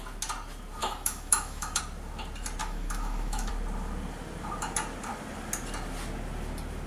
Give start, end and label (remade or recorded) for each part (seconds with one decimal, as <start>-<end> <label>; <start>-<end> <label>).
0.0-0.8 recorded; 0.8-1.8 remade; 1.8-2.6 recorded; 2.6-3.5 remade; 3.5-6.9 recorded